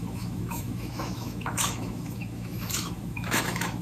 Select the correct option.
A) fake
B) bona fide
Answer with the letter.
A